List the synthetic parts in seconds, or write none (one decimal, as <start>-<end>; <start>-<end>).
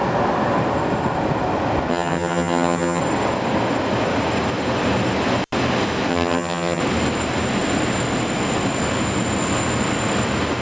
1.9-3.0; 6.1-6.8